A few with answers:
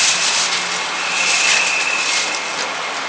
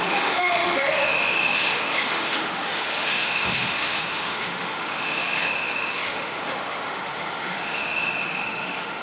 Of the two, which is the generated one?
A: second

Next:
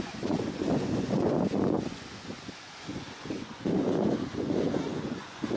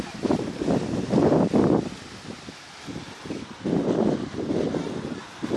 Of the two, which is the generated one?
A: first